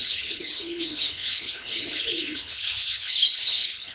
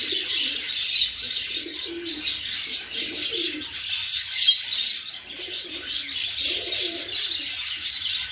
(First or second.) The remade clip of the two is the first